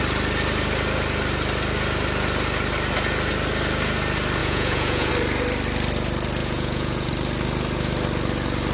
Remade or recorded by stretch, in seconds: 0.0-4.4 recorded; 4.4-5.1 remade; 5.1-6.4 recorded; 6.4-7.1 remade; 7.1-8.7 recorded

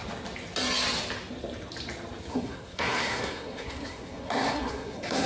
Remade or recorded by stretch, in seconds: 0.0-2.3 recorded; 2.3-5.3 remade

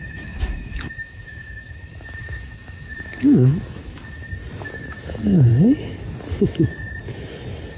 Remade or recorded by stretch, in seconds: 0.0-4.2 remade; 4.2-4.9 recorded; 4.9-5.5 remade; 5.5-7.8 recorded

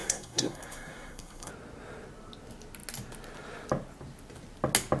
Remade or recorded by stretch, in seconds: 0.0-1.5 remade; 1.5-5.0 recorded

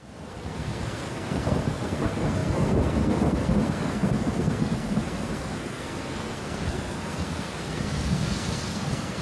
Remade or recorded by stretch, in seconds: 0.0-9.2 remade